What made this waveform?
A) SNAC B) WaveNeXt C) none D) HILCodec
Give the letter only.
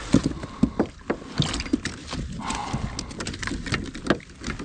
C